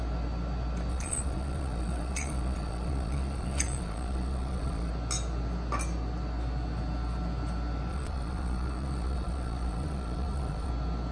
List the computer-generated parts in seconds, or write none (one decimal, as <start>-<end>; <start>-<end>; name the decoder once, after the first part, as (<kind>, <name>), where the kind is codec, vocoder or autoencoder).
0.9-4.9 (vocoder, Vocos); 7.9-10.7